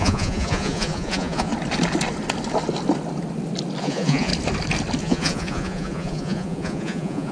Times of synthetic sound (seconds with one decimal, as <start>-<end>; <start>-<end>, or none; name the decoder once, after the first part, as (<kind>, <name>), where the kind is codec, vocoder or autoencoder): 0.0-1.5 (vocoder, Vocos); 3.8-4.3; 5.0-7.3